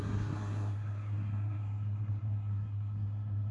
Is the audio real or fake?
fake